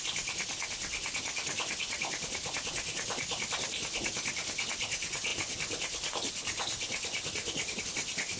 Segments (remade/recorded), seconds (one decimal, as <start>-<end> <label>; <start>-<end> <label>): 0.0-8.4 recorded